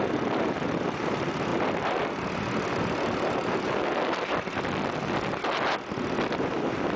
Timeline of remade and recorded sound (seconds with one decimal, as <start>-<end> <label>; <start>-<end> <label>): 0.0-7.0 recorded